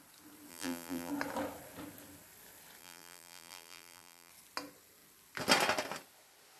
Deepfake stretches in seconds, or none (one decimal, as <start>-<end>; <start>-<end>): 0.5-1.1; 2.8-4.3